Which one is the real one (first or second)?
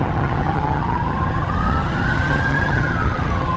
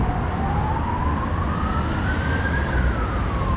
second